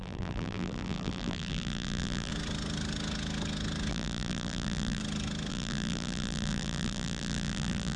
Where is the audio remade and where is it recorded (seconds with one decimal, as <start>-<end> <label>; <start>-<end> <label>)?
0.0-2.3 remade; 2.3-3.9 recorded; 3.9-5.0 remade; 5.0-5.5 recorded; 5.5-8.0 remade